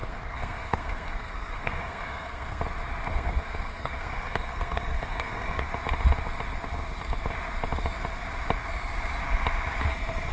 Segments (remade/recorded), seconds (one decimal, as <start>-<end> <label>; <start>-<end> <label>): 0.0-2.6 remade; 2.6-3.1 recorded; 3.1-5.6 remade; 5.6-10.3 recorded